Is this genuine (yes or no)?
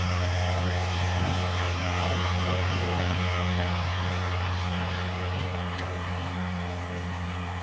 no